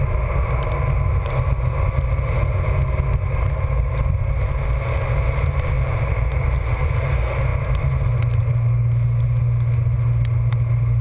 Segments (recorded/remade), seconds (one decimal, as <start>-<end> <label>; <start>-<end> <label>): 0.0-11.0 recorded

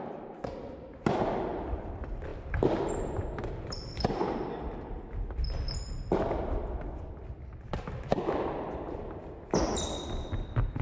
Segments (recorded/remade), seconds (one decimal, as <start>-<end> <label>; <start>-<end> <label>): 0.0-10.8 recorded

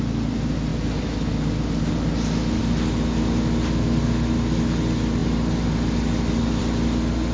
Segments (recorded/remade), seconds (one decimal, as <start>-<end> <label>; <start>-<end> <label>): 0.0-7.3 recorded

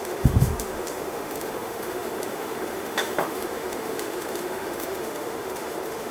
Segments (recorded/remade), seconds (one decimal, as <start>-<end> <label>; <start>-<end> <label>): 0.0-6.1 remade

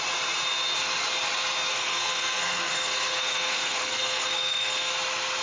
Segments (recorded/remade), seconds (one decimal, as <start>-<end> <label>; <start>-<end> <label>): 0.0-1.7 recorded; 1.7-4.9 remade; 4.9-5.4 recorded

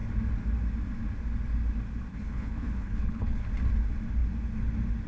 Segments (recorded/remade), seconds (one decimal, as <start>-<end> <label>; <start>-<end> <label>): 0.0-2.1 recorded; 2.1-3.4 remade; 3.4-5.1 recorded

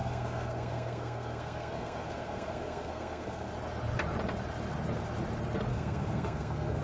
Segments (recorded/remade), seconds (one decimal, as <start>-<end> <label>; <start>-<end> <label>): 0.0-3.5 remade; 3.5-5.7 recorded; 5.7-6.8 remade

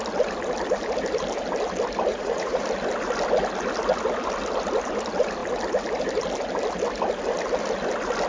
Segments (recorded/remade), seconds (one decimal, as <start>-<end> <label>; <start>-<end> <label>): 0.0-2.1 recorded; 2.1-2.6 remade; 2.6-8.3 recorded